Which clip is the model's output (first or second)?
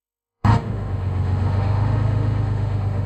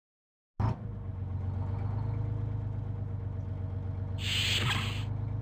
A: first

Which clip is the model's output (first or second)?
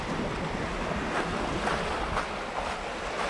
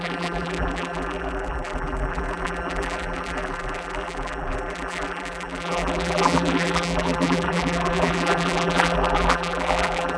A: second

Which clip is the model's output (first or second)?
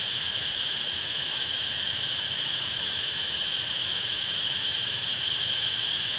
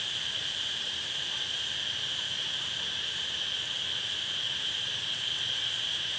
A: first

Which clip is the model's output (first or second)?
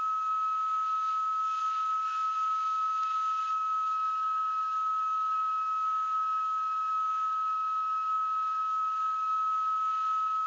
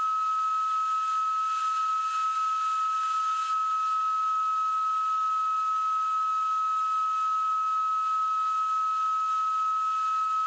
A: first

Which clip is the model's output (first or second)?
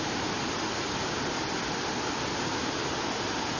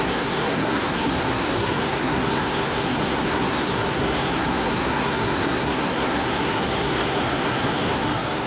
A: second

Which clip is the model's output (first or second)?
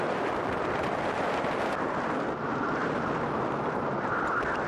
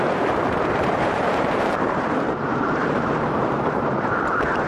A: second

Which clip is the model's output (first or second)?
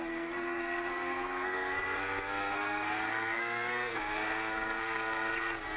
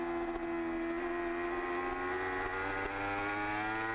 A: first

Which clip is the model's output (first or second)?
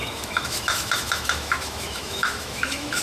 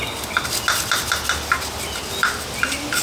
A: first